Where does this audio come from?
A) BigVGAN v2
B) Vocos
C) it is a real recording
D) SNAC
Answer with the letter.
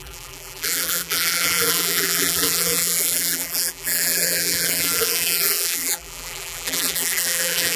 A